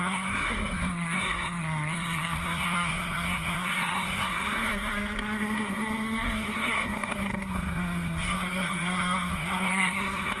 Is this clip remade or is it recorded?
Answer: remade